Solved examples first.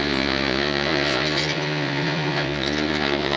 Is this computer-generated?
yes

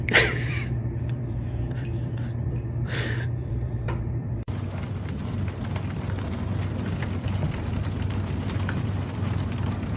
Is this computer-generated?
yes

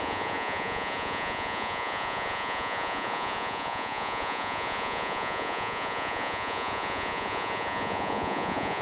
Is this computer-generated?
yes